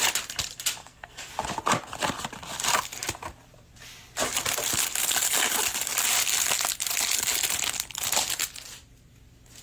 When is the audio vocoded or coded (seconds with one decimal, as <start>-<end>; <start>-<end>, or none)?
0.8-1.3